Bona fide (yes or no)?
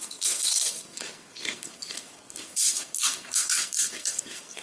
no